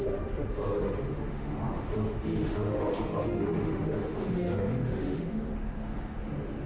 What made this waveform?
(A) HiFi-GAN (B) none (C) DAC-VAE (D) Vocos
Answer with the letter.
C